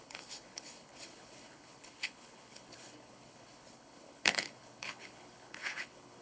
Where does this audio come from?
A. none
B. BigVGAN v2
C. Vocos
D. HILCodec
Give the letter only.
D